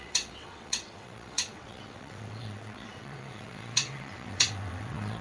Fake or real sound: fake